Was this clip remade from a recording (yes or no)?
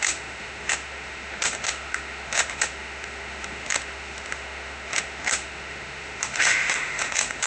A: yes